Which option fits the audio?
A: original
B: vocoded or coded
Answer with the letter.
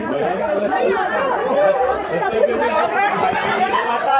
B